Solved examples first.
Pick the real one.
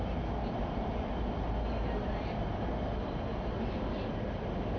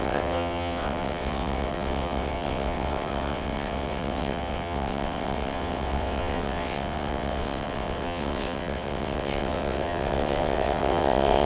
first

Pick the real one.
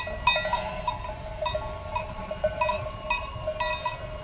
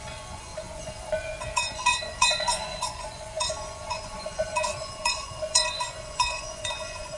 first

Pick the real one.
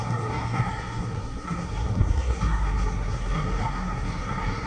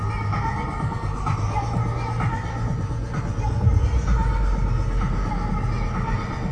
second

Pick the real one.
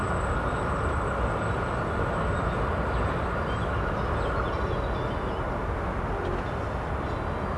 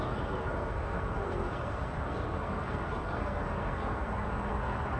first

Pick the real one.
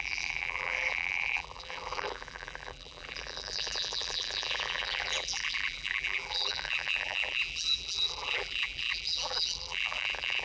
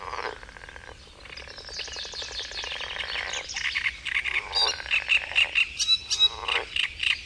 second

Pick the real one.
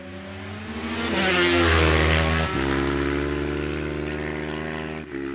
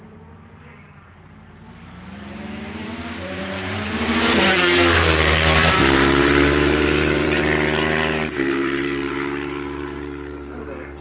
first